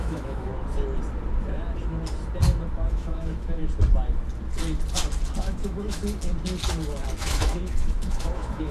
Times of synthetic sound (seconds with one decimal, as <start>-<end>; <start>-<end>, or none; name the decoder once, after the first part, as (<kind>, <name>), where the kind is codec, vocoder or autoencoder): 0.0-0.5 (autoencoder, DAC-VAE); 2.9-3.6; 5.4-6.0; 7.2-8.7